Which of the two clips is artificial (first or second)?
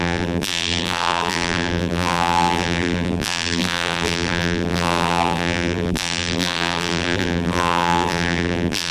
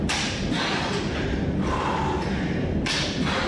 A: first